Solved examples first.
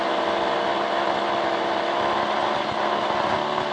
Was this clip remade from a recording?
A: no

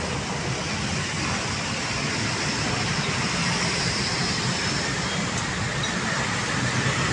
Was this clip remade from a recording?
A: no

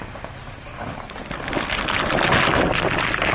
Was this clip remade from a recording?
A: no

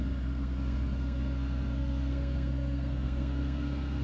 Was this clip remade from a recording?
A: yes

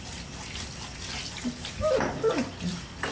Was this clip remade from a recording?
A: no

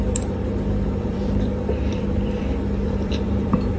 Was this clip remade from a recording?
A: yes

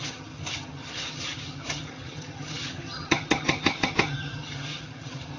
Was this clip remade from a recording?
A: yes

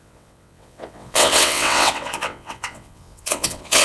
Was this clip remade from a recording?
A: yes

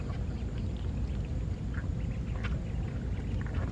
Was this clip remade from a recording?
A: no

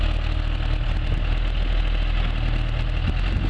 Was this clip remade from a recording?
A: no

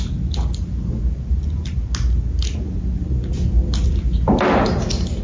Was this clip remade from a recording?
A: no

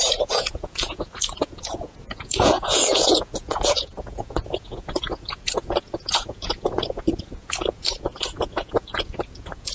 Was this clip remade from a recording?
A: yes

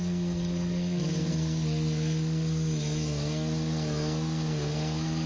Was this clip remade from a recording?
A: yes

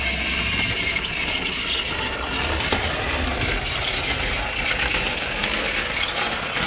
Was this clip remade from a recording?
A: no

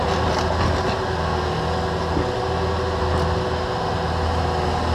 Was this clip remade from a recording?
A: no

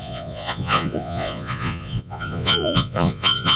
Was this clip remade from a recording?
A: yes